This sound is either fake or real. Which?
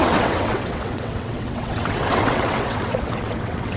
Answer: fake